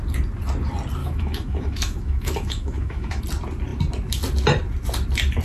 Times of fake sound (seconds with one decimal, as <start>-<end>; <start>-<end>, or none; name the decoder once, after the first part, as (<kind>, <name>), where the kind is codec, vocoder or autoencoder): 1.0-3.2 (autoencoder, DAC-VAE)